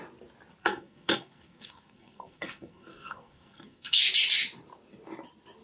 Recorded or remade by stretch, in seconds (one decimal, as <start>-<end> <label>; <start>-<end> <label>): 0.0-0.6 recorded; 0.6-4.0 remade; 4.0-5.6 recorded